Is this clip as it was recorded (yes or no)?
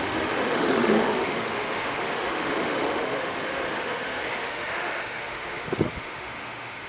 no